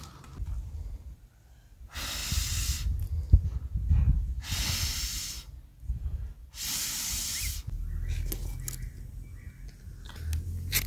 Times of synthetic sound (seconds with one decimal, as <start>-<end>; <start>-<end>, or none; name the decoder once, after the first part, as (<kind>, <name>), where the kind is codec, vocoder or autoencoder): none